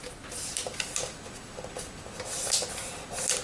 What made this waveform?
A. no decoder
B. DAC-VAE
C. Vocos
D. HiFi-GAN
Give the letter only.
A